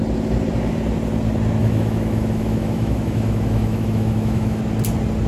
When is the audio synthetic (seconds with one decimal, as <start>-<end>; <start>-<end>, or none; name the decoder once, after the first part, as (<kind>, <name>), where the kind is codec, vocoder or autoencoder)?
1.6-4.6 (autoencoder, DAC-VAE)